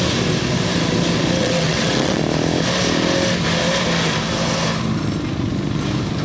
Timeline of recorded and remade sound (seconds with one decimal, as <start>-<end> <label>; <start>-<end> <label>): 0.0-1.4 recorded; 1.4-2.2 remade; 2.2-6.2 recorded